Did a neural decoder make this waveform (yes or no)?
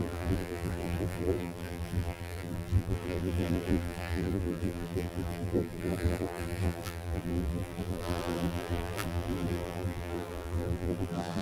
yes